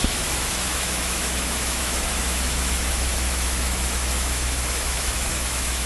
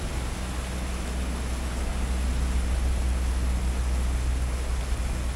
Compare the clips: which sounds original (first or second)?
second